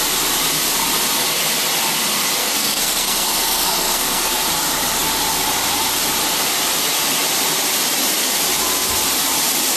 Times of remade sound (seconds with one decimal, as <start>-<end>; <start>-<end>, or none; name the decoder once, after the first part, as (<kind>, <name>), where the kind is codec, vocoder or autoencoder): 2.4-4.3 (codec, SNAC)